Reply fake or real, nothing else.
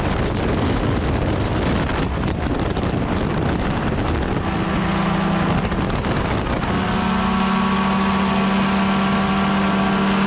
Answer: real